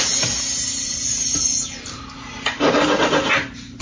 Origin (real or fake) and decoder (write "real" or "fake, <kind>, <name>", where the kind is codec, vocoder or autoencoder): real